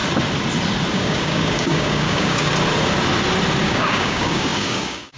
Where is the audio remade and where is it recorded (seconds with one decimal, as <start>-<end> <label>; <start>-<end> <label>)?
0.0-0.9 recorded; 0.9-2.5 remade; 2.5-3.6 recorded; 3.6-5.2 remade